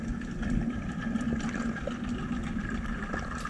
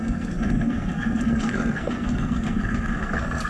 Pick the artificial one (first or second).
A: second